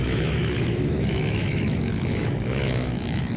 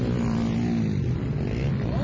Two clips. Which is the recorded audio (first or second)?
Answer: second